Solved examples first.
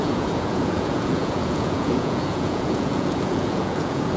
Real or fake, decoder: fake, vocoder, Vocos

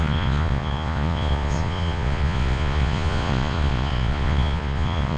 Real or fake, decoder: fake, vocoder, Vocos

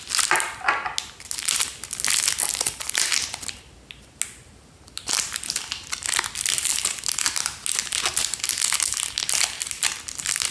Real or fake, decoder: real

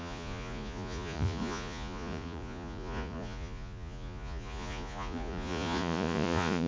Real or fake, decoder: fake, vocoder, Vocos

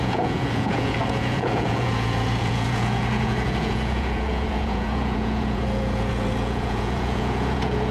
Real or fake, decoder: fake, vocoder, Vocos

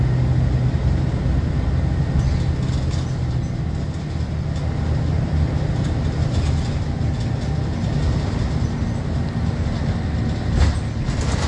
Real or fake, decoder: real